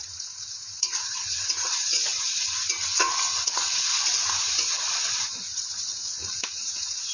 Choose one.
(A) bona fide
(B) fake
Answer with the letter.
B